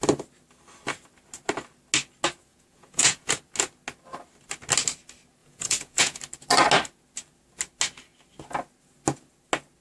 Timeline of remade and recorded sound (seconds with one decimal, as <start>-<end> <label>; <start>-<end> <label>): 0.0-2.5 recorded; 2.5-3.4 remade; 3.4-5.4 recorded; 5.4-6.2 remade; 6.2-9.8 recorded